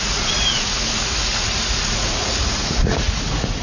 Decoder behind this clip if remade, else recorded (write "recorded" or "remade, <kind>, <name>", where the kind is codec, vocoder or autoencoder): remade, vocoder, Vocos